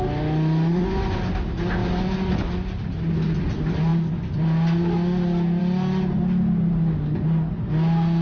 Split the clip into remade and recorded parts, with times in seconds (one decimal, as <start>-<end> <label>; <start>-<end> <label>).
0.0-8.2 recorded